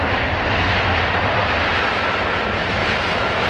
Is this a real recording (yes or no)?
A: yes